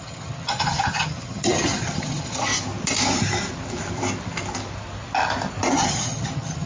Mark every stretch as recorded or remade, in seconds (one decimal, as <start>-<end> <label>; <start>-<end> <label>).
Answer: 0.0-2.5 remade; 2.5-5.7 recorded; 5.7-6.7 remade